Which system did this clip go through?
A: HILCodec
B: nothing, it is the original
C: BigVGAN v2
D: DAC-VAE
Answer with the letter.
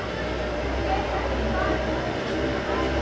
B